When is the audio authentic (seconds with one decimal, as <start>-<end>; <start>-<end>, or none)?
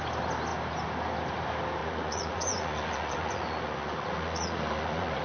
0.0-1.8